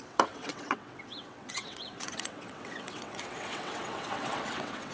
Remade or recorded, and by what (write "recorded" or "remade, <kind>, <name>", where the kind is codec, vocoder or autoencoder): remade, vocoder, WaveNeXt